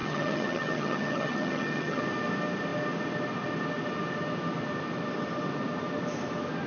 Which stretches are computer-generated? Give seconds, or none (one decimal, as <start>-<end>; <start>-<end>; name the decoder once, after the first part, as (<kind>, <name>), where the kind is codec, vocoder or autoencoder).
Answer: 0.0-2.0 (vocoder, HiFi-GAN)